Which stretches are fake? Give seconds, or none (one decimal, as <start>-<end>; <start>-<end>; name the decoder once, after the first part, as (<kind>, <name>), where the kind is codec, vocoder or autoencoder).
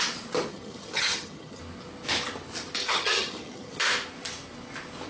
0.5-1.6 (vocoder, HiFi-GAN); 2.8-3.8